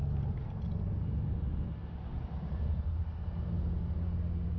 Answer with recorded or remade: recorded